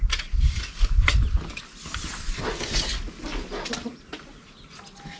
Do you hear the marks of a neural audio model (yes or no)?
no